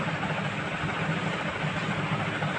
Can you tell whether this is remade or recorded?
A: recorded